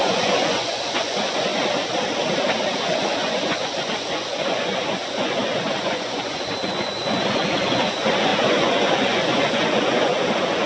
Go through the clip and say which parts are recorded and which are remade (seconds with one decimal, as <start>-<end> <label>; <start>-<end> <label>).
0.0-1.5 remade; 1.5-2.8 recorded; 2.8-10.7 remade